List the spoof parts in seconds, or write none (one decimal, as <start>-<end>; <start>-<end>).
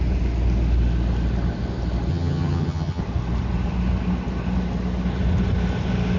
2.1-3.0